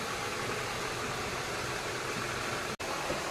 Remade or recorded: recorded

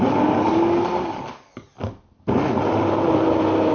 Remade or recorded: recorded